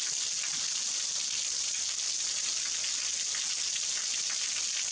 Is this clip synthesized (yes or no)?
no